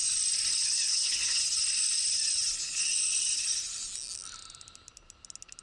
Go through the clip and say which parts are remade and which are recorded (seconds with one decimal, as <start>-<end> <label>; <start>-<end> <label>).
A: 0.0-0.5 recorded; 0.5-1.4 remade; 1.4-5.6 recorded

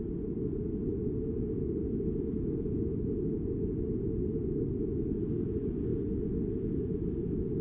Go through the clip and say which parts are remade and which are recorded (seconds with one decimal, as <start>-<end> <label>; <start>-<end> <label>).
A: 0.0-7.6 recorded

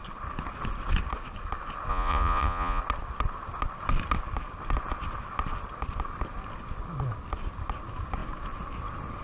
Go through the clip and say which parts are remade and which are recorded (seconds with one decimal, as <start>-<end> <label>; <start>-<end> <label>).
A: 0.0-1.9 recorded; 1.9-2.8 remade; 2.8-9.2 recorded